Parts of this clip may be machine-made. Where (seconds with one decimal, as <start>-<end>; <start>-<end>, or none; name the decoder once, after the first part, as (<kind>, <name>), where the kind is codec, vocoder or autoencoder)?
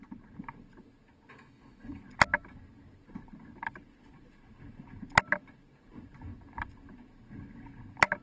1.3-2.0 (autoencoder, DAC-VAE)